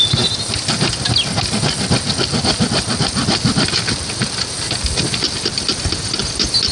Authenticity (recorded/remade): recorded